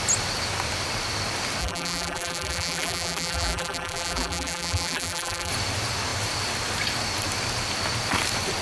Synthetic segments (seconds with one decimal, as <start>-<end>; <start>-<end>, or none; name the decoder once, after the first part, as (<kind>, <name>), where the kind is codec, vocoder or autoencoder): 1.6-5.5 (vocoder, BigVGAN v2)